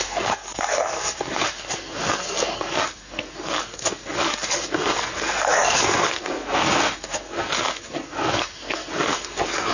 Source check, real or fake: fake